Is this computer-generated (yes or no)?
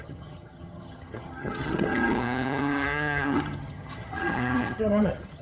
yes